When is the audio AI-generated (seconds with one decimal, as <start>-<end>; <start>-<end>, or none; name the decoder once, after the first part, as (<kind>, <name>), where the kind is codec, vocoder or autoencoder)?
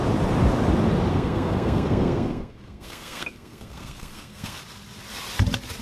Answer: 1.1-4.6 (codec, SNAC)